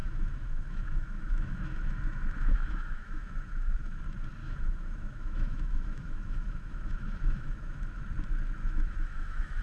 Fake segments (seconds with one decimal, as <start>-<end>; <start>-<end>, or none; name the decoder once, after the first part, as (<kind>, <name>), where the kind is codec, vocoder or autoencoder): 0.0-4.0 (autoencoder, DAC-VAE); 4.4-8.0; 8.6-9.6